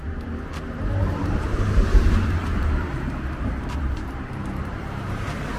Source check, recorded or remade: remade